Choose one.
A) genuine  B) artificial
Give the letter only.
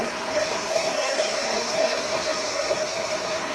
B